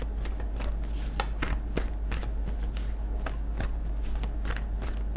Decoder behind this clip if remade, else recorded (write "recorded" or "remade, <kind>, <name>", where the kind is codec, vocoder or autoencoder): recorded